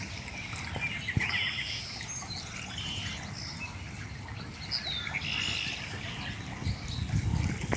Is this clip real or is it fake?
real